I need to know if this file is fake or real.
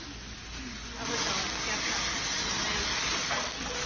real